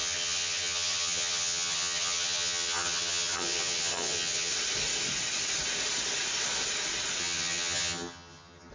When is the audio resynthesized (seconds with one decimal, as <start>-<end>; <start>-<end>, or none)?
0.0-4.5; 7.2-8.7